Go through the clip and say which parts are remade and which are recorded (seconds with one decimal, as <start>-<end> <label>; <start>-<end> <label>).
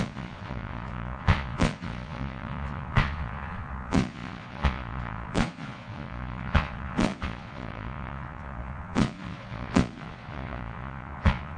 0.0-11.6 remade